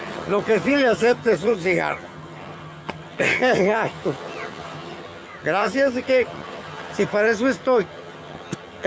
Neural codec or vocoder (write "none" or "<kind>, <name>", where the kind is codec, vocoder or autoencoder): vocoder, HiFi-GAN